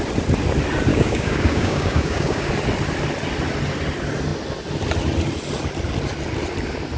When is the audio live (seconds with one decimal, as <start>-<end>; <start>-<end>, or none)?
0.0-0.9; 2.5-7.0